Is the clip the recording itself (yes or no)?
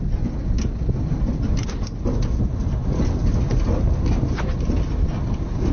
yes